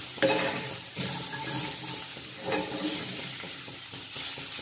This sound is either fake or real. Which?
real